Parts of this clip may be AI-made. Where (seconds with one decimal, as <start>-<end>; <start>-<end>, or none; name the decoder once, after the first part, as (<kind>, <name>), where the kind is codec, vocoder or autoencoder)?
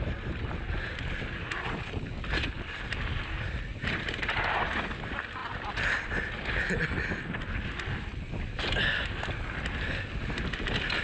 3.7-4.9 (vocoder, BigVGAN v2)